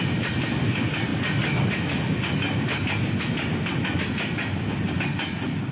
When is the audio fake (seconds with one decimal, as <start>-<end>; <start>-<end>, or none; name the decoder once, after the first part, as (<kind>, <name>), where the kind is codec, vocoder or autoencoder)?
none